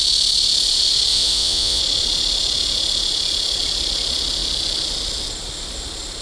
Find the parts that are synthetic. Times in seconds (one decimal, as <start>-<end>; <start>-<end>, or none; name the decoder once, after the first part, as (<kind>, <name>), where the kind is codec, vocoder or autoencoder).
1.1-1.8 (vocoder, Vocos)